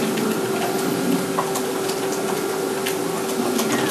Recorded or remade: recorded